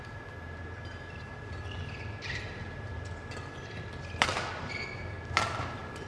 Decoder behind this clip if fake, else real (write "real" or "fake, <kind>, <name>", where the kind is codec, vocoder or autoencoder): real